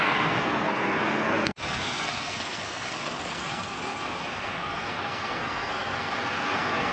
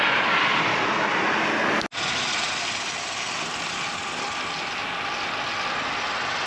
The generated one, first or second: first